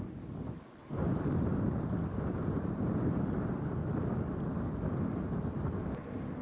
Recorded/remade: recorded